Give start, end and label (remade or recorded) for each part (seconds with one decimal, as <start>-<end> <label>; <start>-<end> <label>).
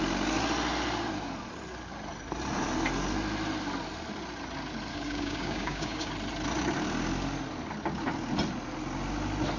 0.0-4.9 recorded; 4.9-6.1 remade; 6.1-9.6 recorded